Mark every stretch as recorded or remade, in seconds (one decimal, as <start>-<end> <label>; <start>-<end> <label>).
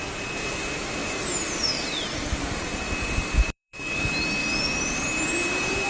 0.0-1.0 recorded; 1.0-4.0 remade; 4.0-4.4 recorded; 4.4-5.0 remade; 5.0-5.9 recorded